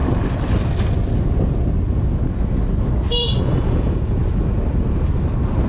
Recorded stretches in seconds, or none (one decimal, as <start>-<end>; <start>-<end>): 0.0-3.4; 4.2-5.7

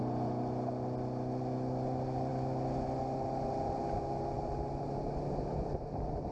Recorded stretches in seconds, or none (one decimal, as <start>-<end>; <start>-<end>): 0.0-6.3

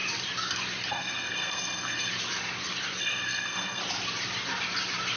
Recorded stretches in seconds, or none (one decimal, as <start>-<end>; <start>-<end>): 0.0-0.9; 2.1-3.0; 3.8-5.2

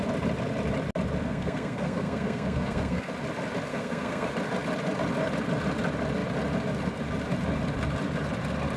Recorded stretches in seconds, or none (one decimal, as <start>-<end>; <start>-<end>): 0.0-1.2; 3.1-3.7; 4.3-8.8

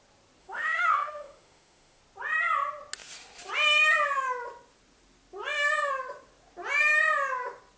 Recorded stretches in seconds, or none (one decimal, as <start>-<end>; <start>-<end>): 0.0-0.4; 2.0-7.8

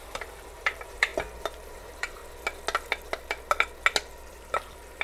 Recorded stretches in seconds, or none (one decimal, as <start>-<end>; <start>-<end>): 1.1-1.7; 2.2-4.3

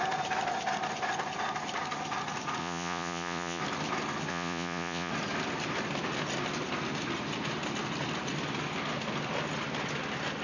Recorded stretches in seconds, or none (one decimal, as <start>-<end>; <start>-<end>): 0.0-2.6; 3.6-4.3; 5.1-10.4